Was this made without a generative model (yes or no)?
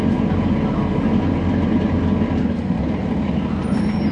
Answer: yes